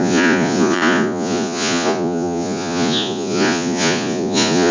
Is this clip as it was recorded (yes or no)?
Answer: no